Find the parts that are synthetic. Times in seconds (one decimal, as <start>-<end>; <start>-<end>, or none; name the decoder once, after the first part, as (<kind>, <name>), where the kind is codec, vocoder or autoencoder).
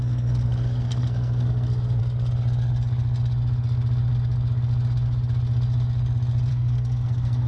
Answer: 0.0-2.0 (codec, SNAC); 6.5-7.5